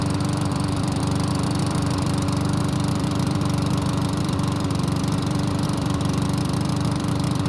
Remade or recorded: remade